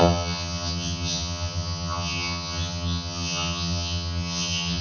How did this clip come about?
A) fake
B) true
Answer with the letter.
A